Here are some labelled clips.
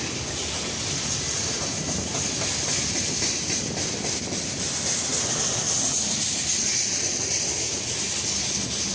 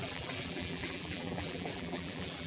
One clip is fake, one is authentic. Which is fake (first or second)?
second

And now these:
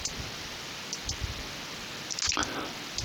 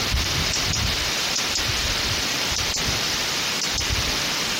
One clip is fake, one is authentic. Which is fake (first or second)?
second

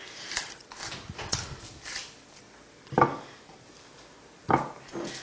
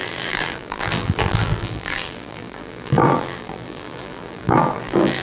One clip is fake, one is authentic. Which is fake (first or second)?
second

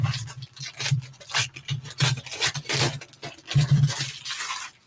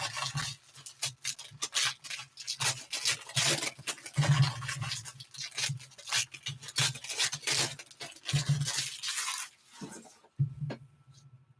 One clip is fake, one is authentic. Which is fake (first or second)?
first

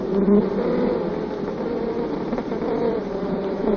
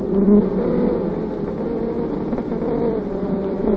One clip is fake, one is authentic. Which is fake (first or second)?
first